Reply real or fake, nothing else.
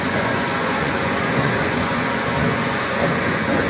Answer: fake